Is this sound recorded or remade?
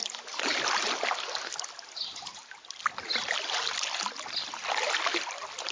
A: recorded